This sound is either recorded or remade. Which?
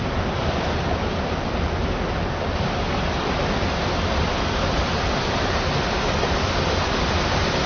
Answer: recorded